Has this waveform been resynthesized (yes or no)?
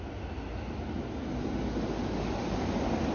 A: no